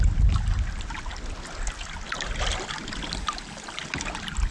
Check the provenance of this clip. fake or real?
real